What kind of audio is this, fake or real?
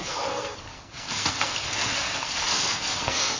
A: fake